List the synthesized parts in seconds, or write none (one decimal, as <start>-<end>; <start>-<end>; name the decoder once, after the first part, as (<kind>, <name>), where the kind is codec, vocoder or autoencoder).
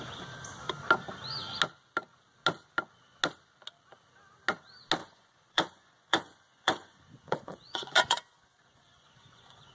5.0-9.7 (vocoder, Vocos)